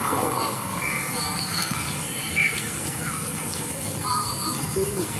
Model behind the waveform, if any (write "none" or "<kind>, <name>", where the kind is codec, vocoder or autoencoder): codec, SNAC